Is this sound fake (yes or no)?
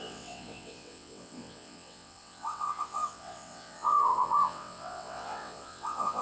yes